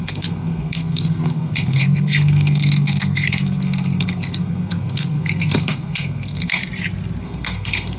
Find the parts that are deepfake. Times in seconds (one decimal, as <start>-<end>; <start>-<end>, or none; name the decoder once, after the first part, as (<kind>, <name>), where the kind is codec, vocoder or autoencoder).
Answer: 0.0-6.6 (codec, SNAC); 7.2-8.0